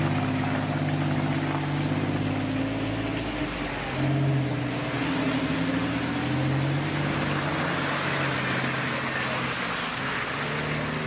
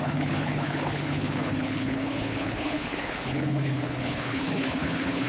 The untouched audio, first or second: first